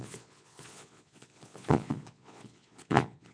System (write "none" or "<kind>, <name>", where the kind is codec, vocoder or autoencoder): vocoder, Vocos